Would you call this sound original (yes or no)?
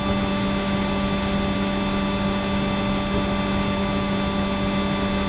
yes